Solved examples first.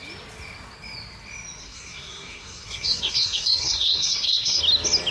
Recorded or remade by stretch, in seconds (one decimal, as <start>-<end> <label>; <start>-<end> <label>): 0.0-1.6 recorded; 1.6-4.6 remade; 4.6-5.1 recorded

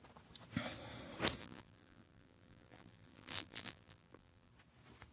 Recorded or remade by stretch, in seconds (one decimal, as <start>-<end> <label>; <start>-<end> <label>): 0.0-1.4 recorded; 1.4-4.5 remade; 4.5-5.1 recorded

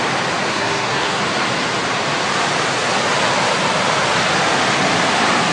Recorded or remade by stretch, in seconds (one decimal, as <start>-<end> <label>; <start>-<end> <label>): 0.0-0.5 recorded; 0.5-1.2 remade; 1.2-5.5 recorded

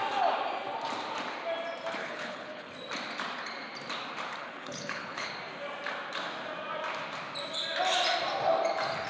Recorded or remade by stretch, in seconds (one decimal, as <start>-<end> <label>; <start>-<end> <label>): 0.0-2.0 recorded; 2.0-2.7 remade; 2.7-4.4 recorded; 4.4-5.3 remade; 5.3-9.1 recorded

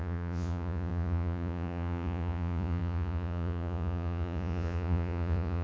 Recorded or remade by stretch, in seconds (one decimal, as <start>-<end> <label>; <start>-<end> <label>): 0.0-5.6 remade

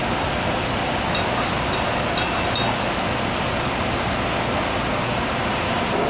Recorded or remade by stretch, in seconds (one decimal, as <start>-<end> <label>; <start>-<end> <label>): 0.0-6.1 recorded